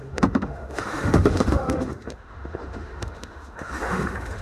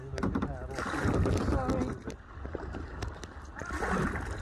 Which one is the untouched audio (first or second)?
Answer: second